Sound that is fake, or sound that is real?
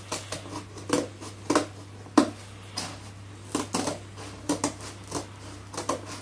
real